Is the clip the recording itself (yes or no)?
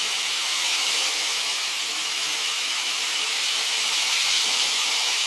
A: no